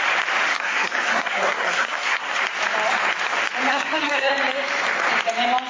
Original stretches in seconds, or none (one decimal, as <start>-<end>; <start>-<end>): 0.0-0.5; 2.4-3.7; 4.3-5.7